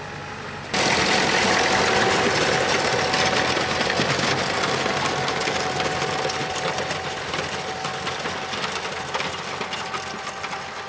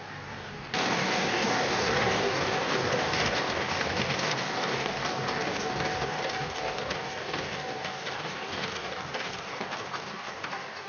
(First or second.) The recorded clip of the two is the first